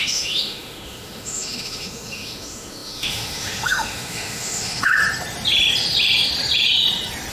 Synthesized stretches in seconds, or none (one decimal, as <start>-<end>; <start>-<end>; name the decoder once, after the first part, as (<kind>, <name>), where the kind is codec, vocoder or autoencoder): 0.0-5.0 (autoencoder, DAC-VAE)